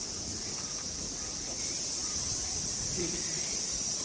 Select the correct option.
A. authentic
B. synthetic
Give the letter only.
B